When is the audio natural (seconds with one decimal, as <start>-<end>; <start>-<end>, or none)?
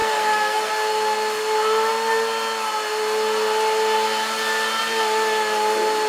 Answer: 0.7-6.1